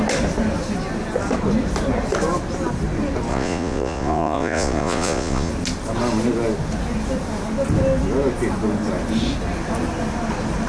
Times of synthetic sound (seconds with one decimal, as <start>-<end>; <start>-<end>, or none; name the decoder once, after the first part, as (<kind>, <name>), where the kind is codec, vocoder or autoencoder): 3.3-5.5 (vocoder, Vocos)

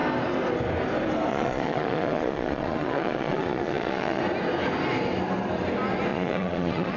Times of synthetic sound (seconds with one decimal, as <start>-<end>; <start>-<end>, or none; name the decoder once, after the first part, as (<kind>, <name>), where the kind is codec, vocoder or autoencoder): 1.3-4.2 (vocoder, Vocos); 6.1-7.0

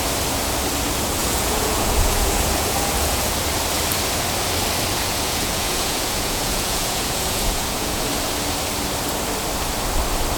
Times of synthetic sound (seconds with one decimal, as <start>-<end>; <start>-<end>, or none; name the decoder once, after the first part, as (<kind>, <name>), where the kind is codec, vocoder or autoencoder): 1.2-3.3 (vocoder, Vocos); 4.9-8.1

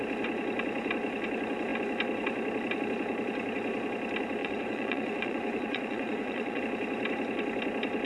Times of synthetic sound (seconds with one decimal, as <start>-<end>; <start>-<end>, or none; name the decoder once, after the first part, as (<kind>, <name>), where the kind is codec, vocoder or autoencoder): 4.4-6.6 (vocoder, Vocos)

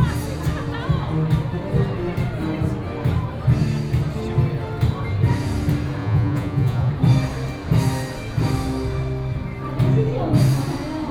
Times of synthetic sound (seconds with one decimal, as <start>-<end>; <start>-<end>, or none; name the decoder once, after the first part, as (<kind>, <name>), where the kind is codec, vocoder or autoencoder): 6.0-6.9 (vocoder, Vocos)

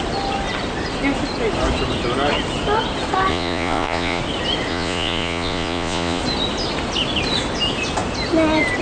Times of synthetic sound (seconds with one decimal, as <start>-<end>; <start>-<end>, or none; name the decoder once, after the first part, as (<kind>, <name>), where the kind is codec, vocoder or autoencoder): 3.3-4.2 (vocoder, Vocos); 4.7-6.2

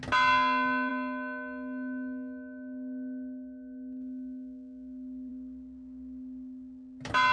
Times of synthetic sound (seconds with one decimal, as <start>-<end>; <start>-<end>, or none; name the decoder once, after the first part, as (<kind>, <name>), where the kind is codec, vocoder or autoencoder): none